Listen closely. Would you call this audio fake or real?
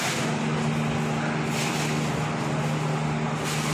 real